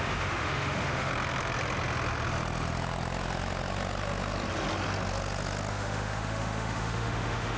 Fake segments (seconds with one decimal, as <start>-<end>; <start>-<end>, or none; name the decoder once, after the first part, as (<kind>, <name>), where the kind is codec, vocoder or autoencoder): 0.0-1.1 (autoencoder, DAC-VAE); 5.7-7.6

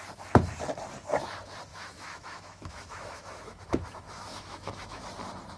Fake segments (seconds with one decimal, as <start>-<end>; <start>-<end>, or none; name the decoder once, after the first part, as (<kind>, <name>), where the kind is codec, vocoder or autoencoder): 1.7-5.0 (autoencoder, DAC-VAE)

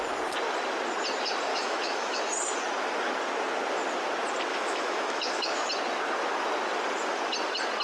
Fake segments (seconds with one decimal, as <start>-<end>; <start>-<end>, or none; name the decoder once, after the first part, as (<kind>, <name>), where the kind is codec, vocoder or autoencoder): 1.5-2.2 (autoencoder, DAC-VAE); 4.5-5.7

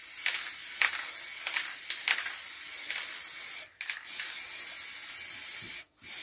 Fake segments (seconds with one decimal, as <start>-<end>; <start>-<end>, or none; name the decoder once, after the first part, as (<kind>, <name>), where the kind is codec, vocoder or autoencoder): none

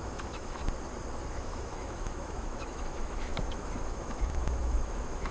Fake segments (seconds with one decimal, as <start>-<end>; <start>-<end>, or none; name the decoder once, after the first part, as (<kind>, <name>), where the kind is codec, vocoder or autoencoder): 0.0-0.6 (autoencoder, DAC-VAE); 1.3-5.3